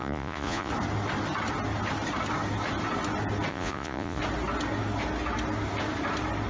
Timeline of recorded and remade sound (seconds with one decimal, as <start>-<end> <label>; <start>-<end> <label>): 0.0-0.7 remade; 0.7-3.5 recorded; 3.5-4.2 remade; 4.2-6.5 recorded